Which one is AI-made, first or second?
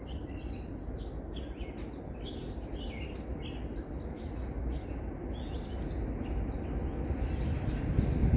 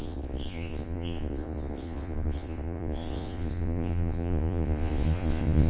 second